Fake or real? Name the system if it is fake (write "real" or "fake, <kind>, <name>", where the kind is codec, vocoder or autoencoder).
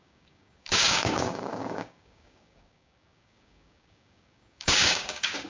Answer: fake, codec, DAC